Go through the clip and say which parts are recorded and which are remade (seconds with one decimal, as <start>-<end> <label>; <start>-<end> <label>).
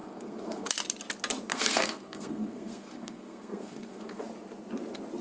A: 0.0-0.7 remade; 0.7-1.5 recorded; 1.5-4.2 remade; 4.2-5.2 recorded